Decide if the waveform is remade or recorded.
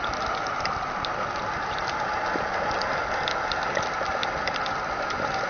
recorded